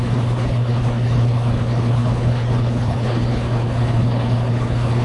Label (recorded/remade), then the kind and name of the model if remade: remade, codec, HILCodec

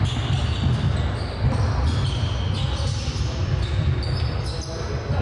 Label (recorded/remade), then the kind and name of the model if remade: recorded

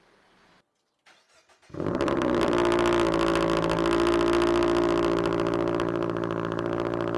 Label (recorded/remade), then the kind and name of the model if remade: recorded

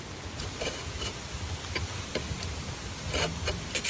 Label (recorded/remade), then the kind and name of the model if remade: recorded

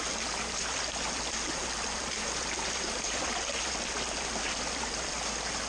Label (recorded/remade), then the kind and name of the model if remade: recorded